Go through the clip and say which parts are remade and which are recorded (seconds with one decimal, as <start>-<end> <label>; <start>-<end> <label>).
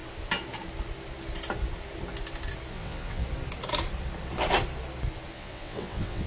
0.0-2.7 recorded; 2.7-3.2 remade; 3.2-5.3 recorded; 5.3-6.3 remade